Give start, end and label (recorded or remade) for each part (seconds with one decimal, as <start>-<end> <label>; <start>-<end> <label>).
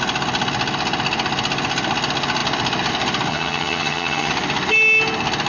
0.0-3.3 recorded; 3.3-4.3 remade; 4.3-5.5 recorded